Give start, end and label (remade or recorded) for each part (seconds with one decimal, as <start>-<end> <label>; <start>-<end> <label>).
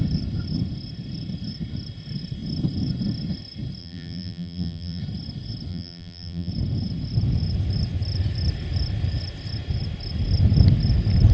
0.0-3.8 recorded; 3.8-5.0 remade; 5.0-5.7 recorded; 5.7-6.5 remade; 6.5-11.3 recorded